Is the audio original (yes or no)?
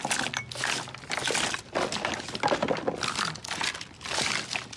yes